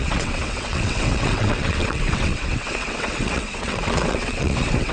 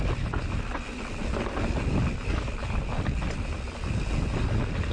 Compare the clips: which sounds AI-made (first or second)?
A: first